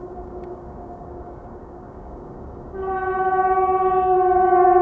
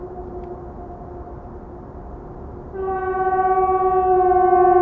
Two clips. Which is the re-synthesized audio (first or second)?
first